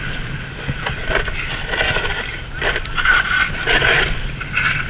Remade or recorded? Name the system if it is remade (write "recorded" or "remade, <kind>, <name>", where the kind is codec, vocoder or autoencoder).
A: recorded